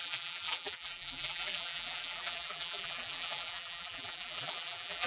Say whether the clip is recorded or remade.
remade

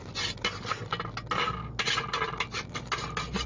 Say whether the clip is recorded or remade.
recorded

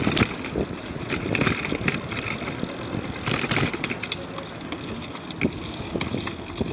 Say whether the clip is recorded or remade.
recorded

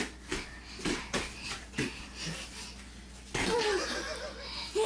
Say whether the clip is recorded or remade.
recorded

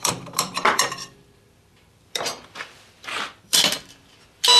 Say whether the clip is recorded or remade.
remade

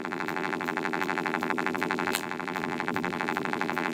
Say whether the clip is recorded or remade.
remade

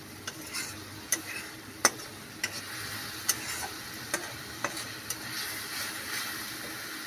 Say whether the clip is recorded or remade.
recorded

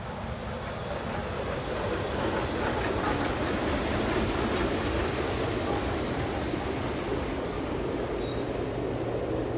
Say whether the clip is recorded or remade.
recorded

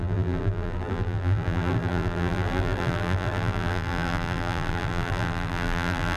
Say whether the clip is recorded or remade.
remade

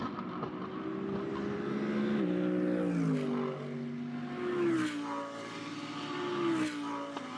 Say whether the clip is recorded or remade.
recorded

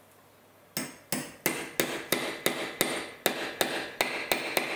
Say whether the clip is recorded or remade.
recorded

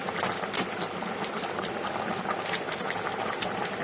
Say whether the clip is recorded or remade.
recorded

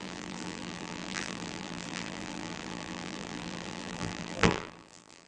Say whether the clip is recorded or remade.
remade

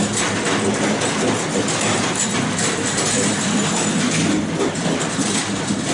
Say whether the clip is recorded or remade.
remade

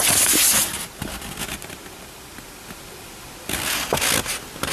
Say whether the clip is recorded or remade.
recorded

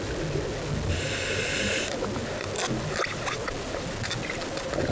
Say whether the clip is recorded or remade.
recorded